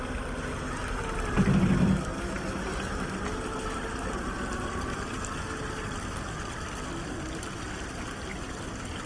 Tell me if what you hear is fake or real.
real